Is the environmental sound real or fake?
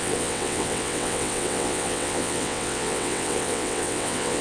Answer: fake